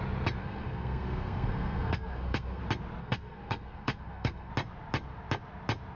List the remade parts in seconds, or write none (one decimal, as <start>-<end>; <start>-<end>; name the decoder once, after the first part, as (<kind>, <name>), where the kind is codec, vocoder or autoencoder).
0.4-2.6 (codec, SNAC); 3.0-4.5